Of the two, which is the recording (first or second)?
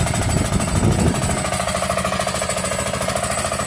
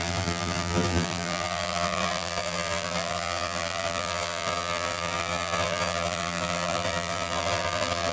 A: first